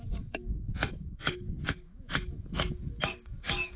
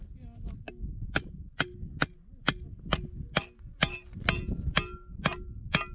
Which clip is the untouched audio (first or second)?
second